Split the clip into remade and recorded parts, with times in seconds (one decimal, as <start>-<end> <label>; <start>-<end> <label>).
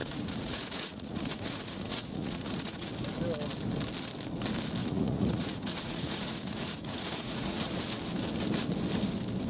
0.0-2.9 remade; 2.9-4.8 recorded; 4.8-7.8 remade; 7.8-9.5 recorded